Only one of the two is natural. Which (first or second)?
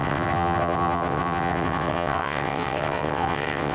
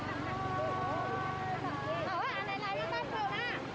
second